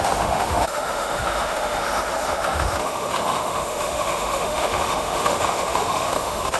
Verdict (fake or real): fake